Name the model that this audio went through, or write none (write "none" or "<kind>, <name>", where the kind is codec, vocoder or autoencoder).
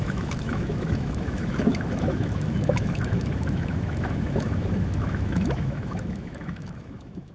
autoencoder, DAC-VAE